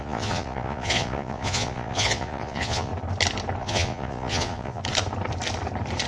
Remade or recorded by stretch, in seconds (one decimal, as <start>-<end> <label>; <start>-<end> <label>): 0.0-2.9 remade; 2.9-3.6 recorded; 3.6-4.8 remade; 4.8-6.1 recorded